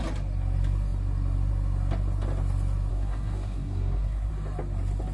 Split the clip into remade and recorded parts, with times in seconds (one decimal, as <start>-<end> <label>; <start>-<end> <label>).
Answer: 0.0-2.9 recorded; 2.9-4.3 remade; 4.3-5.1 recorded